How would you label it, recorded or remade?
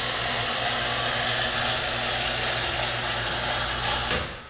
recorded